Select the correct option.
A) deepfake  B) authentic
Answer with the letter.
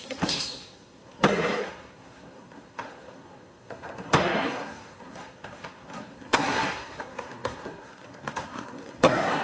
A